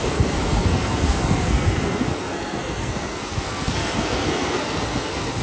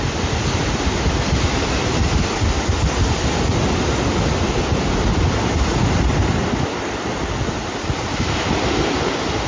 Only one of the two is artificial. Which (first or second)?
first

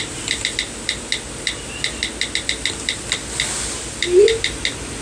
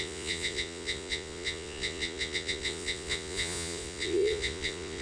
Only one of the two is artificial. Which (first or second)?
second